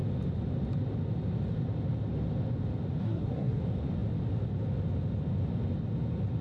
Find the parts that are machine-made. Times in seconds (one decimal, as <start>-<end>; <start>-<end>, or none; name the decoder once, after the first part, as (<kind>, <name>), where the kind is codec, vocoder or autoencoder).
3.0-3.6 (codec, SNAC)